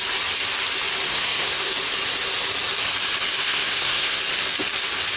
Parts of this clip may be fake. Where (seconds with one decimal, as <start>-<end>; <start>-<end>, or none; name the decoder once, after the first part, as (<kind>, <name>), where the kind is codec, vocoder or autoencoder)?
1.1-1.7 (codec, SNAC); 3.4-4.2